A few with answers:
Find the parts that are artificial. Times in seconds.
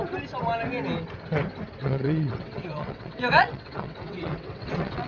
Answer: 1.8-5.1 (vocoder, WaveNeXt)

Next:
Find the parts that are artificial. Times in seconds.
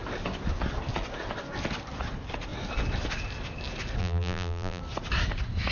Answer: 4.0-4.8 (vocoder, BigVGAN v2)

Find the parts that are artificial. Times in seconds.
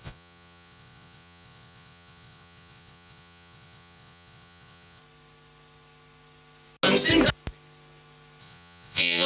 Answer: 0.0-5.0 (vocoder, Vocos); 8.4-9.3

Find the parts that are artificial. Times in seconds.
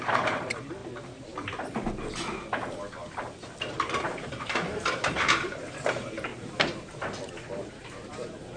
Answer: 0.0-0.8 (vocoder, BigVGAN v2); 3.6-6.3; 7.7-8.6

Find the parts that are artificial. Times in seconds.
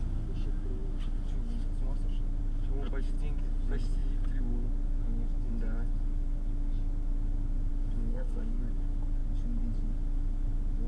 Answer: 8.1-8.6 (codec, SNAC)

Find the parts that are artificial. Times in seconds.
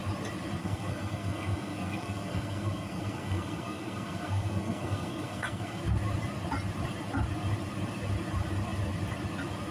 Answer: 0.6-5.8 (codec, SNAC)